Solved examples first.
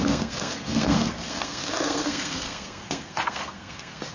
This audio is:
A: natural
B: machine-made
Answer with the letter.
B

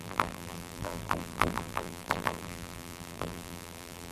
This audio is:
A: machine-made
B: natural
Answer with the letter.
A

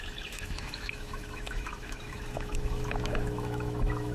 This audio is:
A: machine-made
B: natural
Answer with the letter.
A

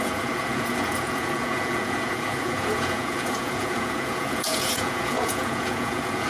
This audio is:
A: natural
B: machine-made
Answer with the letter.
B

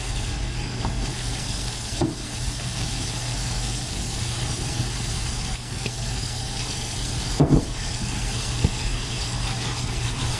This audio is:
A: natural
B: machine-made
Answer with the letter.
B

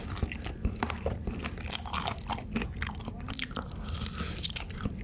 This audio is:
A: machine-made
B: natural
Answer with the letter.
A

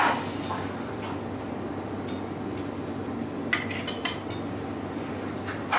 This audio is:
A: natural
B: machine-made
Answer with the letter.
A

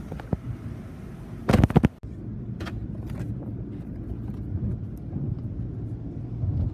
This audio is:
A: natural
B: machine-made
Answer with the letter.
A